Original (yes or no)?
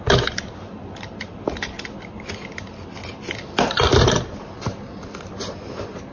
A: yes